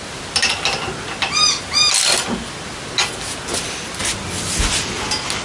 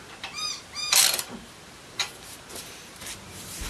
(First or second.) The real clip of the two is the first